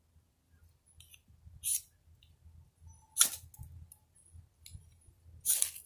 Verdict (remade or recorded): recorded